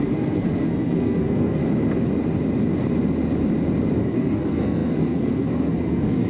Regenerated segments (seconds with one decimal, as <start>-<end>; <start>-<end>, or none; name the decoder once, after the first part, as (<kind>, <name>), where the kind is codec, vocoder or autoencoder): 0.0-1.6 (codec, SNAC); 4.0-6.3